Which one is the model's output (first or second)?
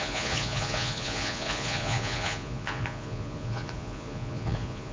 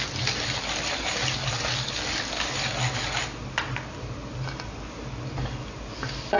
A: first